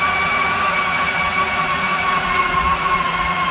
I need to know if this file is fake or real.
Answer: fake